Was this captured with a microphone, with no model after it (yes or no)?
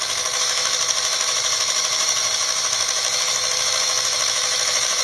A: no